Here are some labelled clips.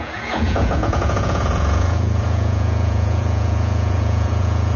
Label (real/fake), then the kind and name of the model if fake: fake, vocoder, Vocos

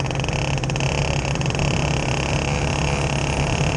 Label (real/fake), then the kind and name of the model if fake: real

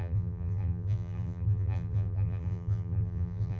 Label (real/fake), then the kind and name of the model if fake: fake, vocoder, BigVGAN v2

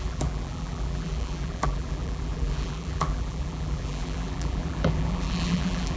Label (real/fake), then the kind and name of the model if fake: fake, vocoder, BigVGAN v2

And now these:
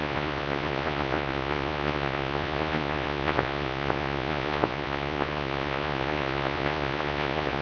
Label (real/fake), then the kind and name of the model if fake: fake, vocoder, Vocos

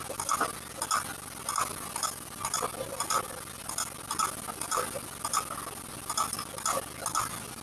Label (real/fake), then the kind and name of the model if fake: real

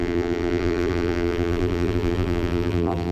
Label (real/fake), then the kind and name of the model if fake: fake, vocoder, BigVGAN v2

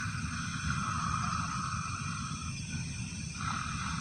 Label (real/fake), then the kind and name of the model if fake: real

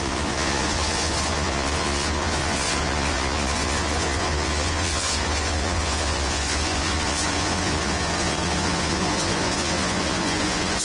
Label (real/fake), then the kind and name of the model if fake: fake, vocoder, Vocos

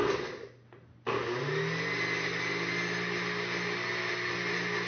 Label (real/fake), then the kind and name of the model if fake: real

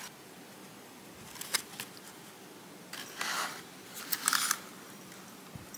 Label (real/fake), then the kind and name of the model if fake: real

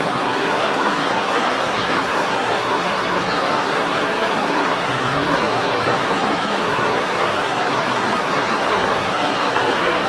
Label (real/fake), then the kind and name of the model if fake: fake, codec, SNAC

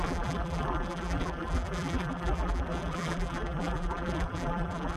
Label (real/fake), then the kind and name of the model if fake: fake, vocoder, BigVGAN v2